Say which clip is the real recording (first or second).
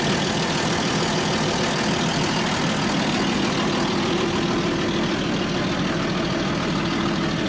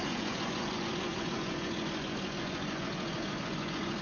first